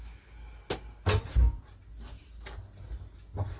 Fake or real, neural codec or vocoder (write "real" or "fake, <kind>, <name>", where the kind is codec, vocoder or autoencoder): real